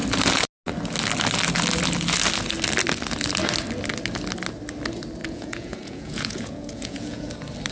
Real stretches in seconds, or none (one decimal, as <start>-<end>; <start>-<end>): 0.0-5.2; 7.3-7.7